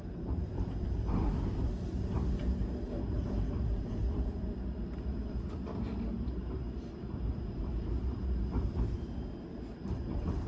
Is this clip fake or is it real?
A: fake